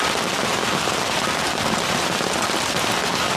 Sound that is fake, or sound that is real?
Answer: real